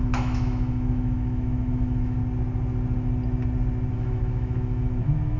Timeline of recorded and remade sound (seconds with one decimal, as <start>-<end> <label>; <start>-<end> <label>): 0.0-2.2 remade; 2.2-3.9 recorded; 3.9-5.4 remade